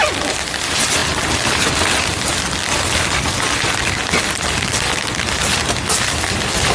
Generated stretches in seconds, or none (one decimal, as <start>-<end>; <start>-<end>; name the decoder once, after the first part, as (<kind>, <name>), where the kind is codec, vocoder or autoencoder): none